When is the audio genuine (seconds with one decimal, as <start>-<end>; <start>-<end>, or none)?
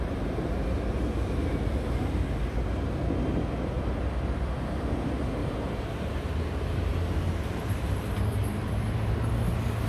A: 0.0-5.4; 9.1-9.9